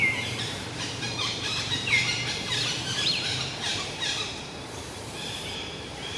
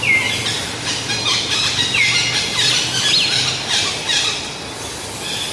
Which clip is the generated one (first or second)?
first